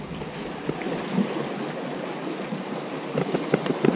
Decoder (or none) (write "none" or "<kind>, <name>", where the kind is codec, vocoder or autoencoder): none